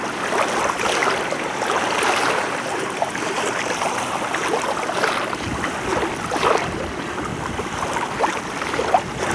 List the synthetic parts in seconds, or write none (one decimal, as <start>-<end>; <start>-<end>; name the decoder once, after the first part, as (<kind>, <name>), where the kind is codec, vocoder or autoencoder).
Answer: 1.0-5.0 (vocoder, BigVGAN v2); 7.3-7.8